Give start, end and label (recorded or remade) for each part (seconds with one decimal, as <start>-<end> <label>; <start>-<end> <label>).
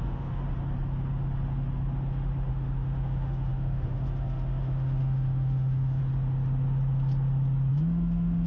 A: 0.0-0.4 remade; 0.4-2.5 recorded; 2.5-6.0 remade; 6.0-7.7 recorded; 7.7-8.5 remade